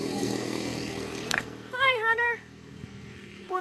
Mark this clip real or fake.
fake